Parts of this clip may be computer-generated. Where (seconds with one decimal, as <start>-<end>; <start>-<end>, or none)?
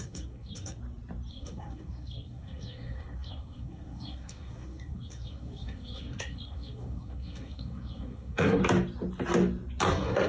0.0-0.8; 1.3-8.6; 9.9-10.3